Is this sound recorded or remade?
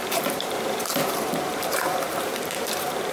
remade